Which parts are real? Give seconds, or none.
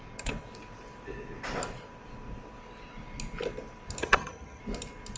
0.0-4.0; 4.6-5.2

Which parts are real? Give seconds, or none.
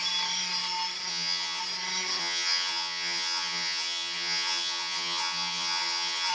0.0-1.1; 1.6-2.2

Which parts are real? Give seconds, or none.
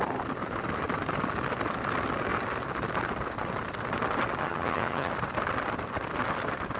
0.0-4.4; 5.1-6.8